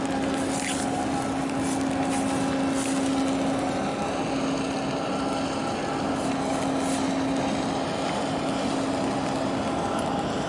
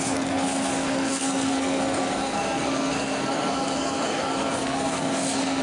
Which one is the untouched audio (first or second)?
first